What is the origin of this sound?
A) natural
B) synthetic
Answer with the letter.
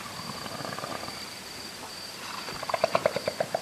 A